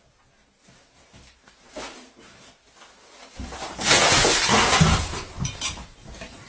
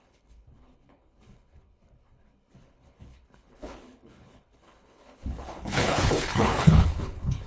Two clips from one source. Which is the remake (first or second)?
second